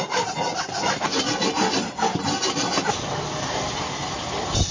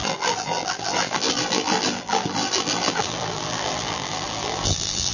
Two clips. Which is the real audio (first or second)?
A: first